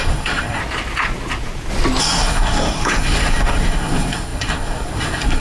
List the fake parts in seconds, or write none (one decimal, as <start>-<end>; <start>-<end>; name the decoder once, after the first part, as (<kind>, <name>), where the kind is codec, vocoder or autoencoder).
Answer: 0.0-0.6 (codec, SNAC); 2.0-5.4

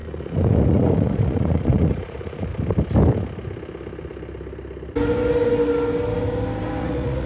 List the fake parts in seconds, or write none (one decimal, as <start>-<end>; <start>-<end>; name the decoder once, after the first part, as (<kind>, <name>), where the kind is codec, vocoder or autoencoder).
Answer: 0.0-2.5 (vocoder, Vocos); 6.8-7.3